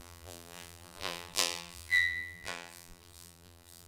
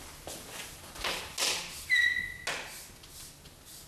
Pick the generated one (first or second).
first